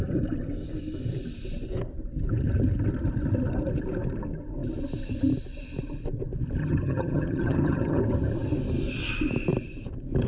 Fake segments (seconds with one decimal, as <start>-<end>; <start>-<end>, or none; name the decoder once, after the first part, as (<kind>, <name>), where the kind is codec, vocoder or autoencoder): 6.6-8.0 (vocoder, HiFi-GAN)